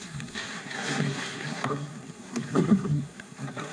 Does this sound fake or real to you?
fake